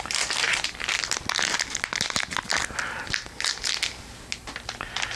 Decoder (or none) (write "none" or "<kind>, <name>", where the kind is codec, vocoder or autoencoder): none